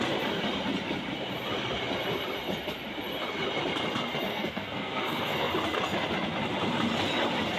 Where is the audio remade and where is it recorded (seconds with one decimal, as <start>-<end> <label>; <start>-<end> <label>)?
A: 0.0-4.3 recorded; 4.3-5.5 remade; 5.5-7.6 recorded